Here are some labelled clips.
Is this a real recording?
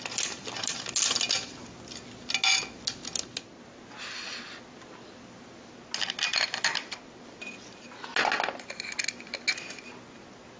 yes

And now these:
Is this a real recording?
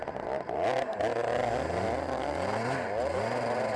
yes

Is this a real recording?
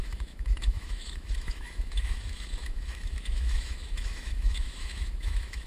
no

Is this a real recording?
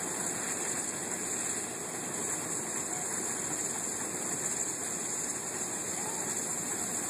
yes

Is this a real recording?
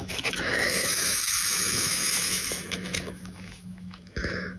no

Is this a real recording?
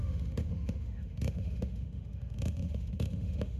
no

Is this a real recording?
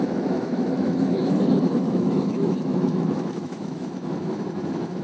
no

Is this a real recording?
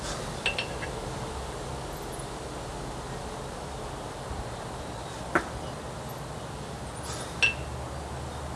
yes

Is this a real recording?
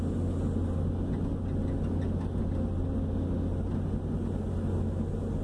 yes